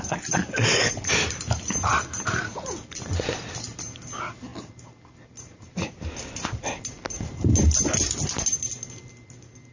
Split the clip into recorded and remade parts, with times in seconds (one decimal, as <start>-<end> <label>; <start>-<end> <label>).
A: 0.0-9.7 recorded